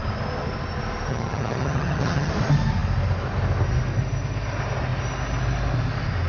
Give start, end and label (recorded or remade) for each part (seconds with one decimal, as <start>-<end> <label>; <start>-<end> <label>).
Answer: 0.0-1.1 recorded; 1.1-2.3 remade; 2.3-6.3 recorded